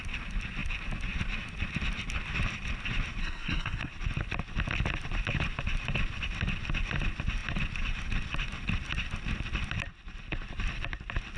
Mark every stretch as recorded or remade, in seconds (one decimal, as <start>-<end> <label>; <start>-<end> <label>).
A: 0.0-3.2 recorded; 3.2-3.9 remade; 3.9-11.4 recorded